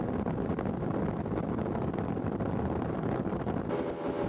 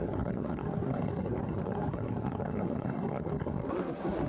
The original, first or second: first